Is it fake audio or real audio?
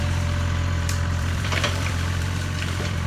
fake